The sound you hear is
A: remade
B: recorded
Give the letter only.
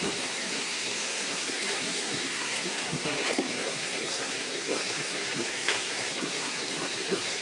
A